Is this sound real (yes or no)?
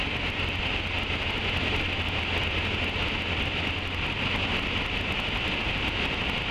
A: yes